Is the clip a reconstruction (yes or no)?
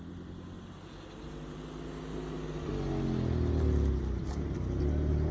no